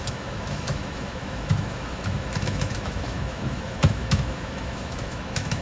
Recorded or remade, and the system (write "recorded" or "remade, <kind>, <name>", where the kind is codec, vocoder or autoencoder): remade, autoencoder, DAC-VAE